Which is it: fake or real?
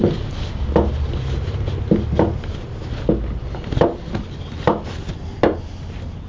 real